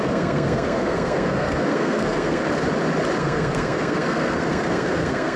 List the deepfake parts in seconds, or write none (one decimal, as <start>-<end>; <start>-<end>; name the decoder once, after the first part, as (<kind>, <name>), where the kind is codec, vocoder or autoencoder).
0.0-2.4 (codec, SNAC); 3.2-5.4